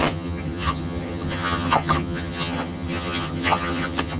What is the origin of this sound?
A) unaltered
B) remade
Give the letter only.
B